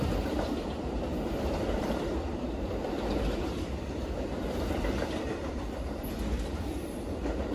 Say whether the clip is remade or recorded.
remade